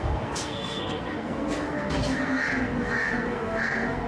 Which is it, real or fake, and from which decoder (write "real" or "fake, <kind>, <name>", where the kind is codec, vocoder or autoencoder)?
fake, codec, SNAC